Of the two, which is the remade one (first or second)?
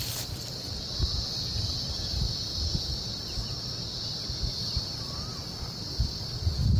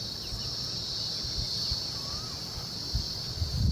first